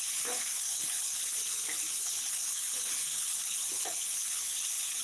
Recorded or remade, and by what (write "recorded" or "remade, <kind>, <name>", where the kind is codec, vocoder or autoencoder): remade, codec, HILCodec